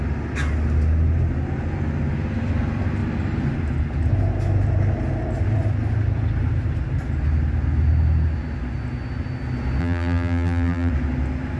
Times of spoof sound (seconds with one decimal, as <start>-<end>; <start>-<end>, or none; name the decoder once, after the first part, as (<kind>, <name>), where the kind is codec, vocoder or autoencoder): 9.8-10.9 (vocoder, BigVGAN v2)